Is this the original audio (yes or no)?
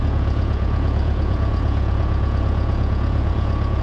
no